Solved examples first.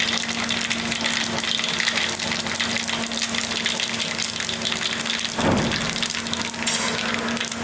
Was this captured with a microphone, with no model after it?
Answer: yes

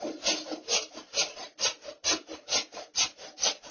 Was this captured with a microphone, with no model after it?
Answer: yes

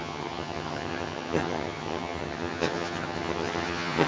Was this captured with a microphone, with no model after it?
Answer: no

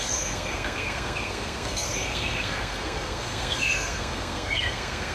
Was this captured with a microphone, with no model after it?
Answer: no